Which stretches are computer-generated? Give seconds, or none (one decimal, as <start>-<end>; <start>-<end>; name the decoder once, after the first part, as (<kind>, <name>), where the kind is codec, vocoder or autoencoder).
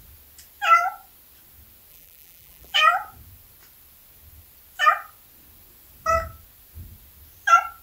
1.9-2.8 (vocoder, BigVGAN v2)